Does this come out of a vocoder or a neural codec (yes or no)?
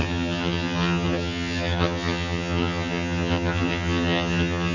yes